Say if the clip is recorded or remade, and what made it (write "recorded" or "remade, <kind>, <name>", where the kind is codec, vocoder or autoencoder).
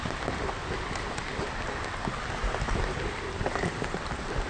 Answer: recorded